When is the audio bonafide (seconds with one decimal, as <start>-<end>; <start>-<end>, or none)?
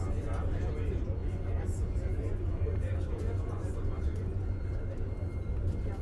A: 0.0-1.2; 4.8-6.0